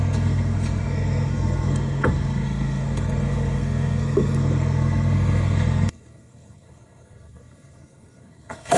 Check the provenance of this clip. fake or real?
fake